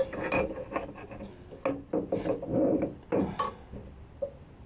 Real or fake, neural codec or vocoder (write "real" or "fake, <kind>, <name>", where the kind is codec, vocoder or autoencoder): real